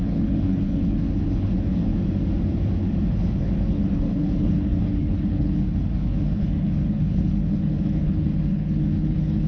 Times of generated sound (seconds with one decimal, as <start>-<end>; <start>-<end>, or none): 0.0-1.9; 3.1-9.5